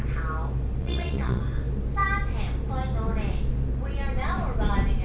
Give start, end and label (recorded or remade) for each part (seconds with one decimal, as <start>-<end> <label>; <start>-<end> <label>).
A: 0.0-0.8 recorded; 0.8-1.4 remade; 1.4-5.0 recorded

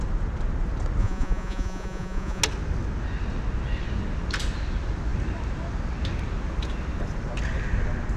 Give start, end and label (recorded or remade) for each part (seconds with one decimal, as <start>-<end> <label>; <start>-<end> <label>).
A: 0.0-1.0 recorded; 1.0-2.4 remade; 2.4-8.2 recorded

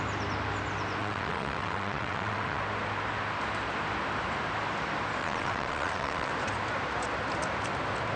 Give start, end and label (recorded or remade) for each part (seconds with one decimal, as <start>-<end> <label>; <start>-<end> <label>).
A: 0.0-1.0 recorded; 1.0-2.6 remade; 2.6-5.2 recorded; 5.2-6.3 remade; 6.3-8.2 recorded

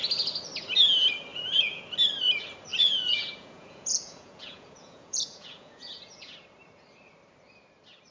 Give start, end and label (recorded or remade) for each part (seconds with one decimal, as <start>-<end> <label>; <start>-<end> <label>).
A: 0.0-1.3 recorded; 1.3-1.8 remade; 1.8-2.7 recorded; 2.7-6.3 remade; 6.3-8.1 recorded

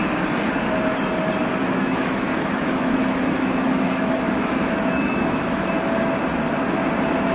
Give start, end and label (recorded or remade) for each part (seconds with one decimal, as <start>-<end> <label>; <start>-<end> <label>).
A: 0.0-1.6 recorded; 1.6-5.8 remade; 5.8-7.3 recorded

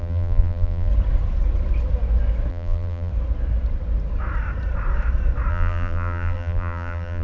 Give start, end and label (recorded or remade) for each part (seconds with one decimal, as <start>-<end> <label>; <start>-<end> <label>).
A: 0.0-0.9 remade; 0.9-2.5 recorded; 2.5-3.1 remade; 3.1-5.5 recorded; 5.5-7.2 remade

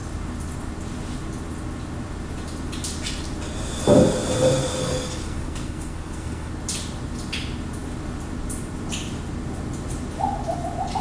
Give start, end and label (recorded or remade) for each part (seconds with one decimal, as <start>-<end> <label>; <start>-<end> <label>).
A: 0.0-4.6 recorded; 4.6-6.5 remade; 6.5-11.0 recorded

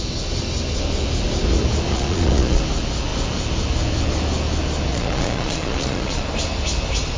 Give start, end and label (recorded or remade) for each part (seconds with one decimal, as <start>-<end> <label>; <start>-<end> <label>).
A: 0.0-1.9 recorded; 1.9-2.6 remade; 2.6-4.9 recorded; 4.9-6.2 remade; 6.2-7.2 recorded